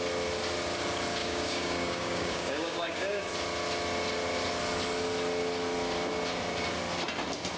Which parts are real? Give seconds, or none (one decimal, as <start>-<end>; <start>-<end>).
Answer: 0.0-1.2; 3.3-7.6